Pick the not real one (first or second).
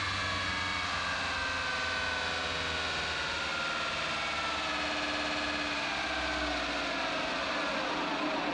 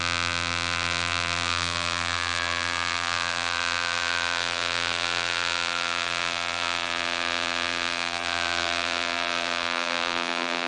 second